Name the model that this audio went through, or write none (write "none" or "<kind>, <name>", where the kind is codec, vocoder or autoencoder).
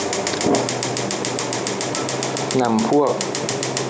none